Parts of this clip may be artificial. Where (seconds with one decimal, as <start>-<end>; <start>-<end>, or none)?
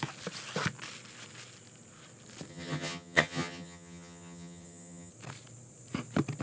2.5-5.1